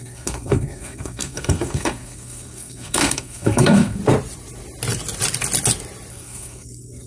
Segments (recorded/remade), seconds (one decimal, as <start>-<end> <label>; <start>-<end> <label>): 0.0-4.0 remade; 4.0-6.1 recorded; 6.1-7.1 remade